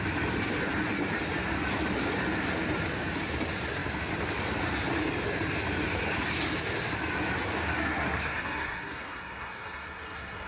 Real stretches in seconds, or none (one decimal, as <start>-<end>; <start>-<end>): 0.0-7.8